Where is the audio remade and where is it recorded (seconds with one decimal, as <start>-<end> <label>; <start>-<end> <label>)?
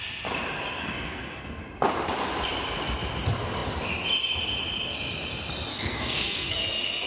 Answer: 0.0-0.8 recorded; 0.8-1.6 remade; 1.6-5.7 recorded; 5.7-7.1 remade